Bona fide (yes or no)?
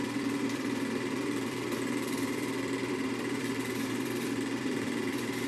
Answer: no